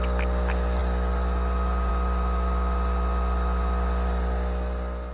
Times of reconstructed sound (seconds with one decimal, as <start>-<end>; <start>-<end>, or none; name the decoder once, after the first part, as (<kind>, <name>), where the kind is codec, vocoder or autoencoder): none